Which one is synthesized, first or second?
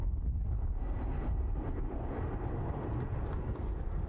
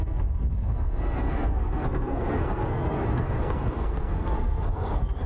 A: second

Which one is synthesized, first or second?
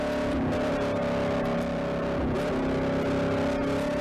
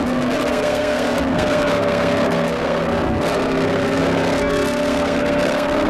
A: second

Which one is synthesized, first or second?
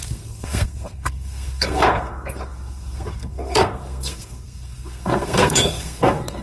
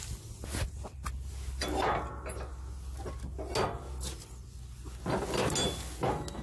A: first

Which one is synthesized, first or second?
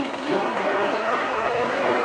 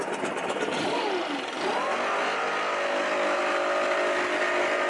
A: first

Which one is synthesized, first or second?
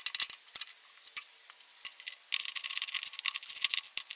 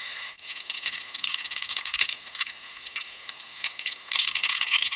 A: second